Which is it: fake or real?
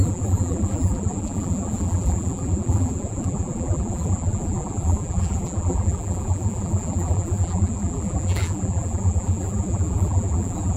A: fake